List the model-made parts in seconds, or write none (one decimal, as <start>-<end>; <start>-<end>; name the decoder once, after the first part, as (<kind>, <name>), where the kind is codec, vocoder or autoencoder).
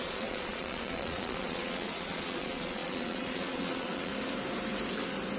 0.0-4.1 (vocoder, Vocos)